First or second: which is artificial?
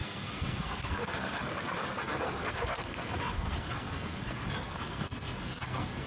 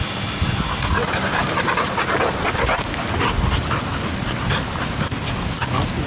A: first